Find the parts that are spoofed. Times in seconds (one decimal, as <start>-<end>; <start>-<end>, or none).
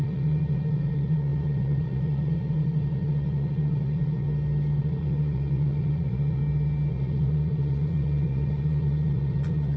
0.0-4.3; 4.8-6.4; 6.9-9.8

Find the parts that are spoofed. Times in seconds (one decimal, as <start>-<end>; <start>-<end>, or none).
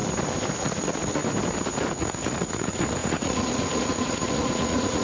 0.6-1.2; 1.9-5.0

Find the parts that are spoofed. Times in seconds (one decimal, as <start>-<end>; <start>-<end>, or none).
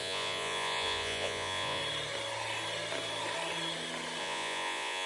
0.0-1.8; 4.2-5.1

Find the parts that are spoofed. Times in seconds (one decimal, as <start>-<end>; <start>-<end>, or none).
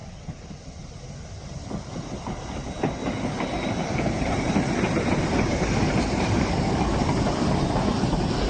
none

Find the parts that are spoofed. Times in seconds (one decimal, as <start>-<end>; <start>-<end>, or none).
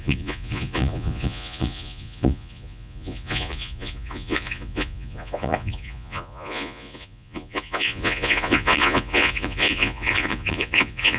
0.0-11.2